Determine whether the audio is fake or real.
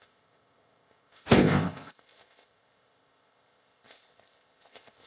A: fake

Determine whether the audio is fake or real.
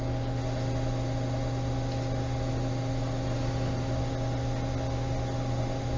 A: real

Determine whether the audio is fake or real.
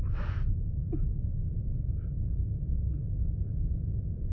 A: real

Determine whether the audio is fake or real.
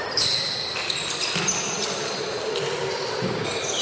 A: real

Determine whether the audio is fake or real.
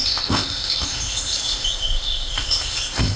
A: fake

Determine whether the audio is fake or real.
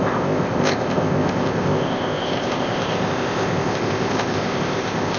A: fake